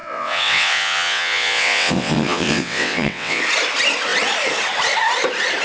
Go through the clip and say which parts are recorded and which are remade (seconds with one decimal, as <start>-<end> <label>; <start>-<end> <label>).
0.0-3.4 remade; 3.4-5.6 recorded